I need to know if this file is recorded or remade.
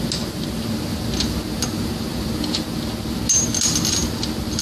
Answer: recorded